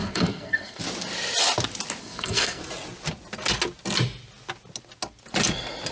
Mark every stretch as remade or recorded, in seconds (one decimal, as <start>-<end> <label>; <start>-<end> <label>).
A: 0.0-0.8 remade; 0.8-2.0 recorded; 2.0-2.6 remade; 2.6-5.9 recorded